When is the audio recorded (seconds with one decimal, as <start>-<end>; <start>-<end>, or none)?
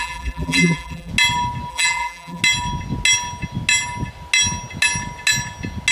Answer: 1.1-1.7; 2.4-5.9